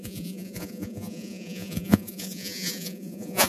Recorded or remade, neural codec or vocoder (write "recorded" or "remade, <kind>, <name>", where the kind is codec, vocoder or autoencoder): remade, vocoder, Vocos